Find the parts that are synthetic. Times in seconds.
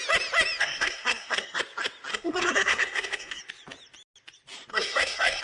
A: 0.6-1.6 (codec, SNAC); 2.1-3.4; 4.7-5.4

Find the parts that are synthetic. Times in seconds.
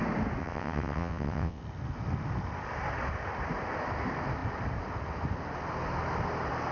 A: 0.4-1.6 (vocoder, WaveNeXt)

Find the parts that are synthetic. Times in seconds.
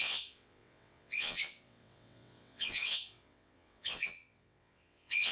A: 0.0-5.3 (vocoder, WaveNeXt)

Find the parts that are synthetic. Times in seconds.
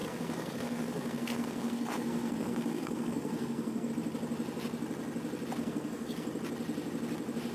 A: 0.0-3.9 (codec, SNAC); 5.6-6.3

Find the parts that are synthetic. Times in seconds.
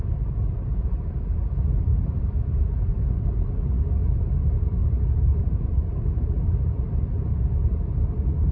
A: 1.9-2.9 (vocoder, BigVGAN v2); 4.8-6.9